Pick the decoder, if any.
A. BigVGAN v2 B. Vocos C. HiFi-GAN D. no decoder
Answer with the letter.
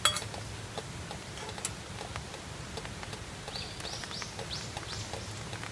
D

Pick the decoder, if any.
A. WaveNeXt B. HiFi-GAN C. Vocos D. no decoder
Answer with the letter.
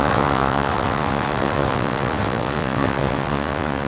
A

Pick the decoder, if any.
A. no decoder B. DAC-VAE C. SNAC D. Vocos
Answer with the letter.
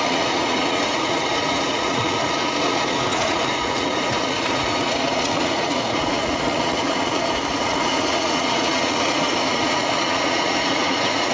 D